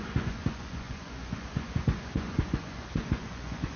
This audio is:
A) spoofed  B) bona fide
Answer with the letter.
A